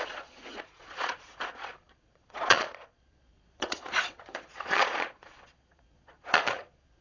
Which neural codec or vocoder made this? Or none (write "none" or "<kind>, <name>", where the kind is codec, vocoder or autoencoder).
vocoder, Vocos